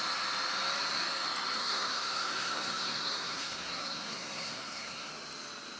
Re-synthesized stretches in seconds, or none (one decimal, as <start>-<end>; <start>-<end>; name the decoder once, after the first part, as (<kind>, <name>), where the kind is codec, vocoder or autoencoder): 1.6-5.1 (codec, SNAC)